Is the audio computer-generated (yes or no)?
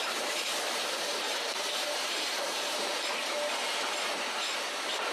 yes